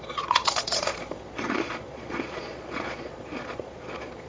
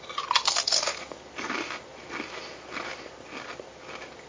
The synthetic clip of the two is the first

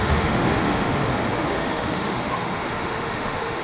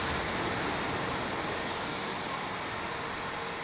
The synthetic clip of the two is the first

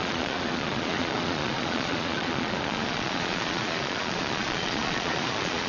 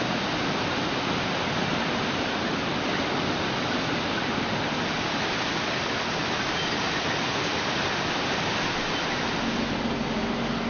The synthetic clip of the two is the first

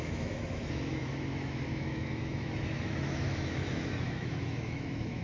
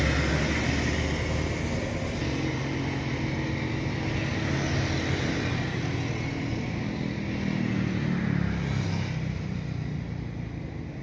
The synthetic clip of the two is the first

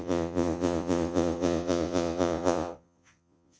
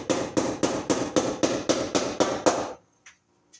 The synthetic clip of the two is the first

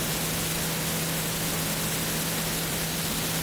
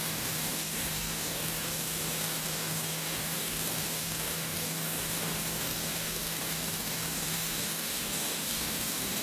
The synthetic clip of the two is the second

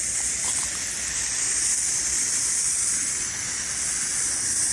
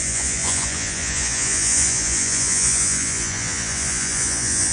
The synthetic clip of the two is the second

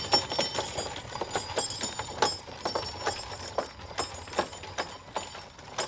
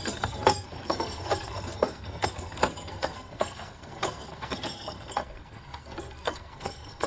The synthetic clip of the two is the second